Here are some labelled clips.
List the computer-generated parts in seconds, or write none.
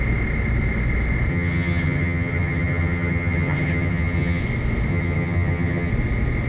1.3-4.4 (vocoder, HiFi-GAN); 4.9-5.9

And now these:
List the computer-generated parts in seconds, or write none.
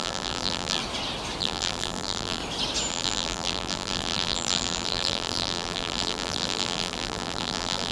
0.0-0.8 (vocoder, BigVGAN v2); 1.4-2.4; 2.9-7.9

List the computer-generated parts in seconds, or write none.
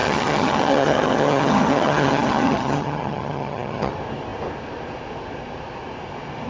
0.0-3.9 (vocoder, HiFi-GAN)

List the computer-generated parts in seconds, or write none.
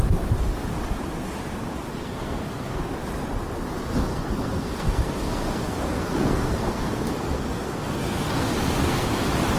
1.9-2.9 (codec, SNAC); 4.1-9.1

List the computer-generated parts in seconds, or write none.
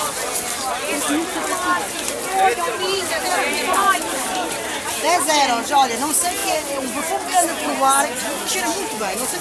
1.8-5.3 (vocoder, BigVGAN v2); 6.4-7.0